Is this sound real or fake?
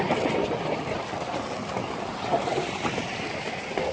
real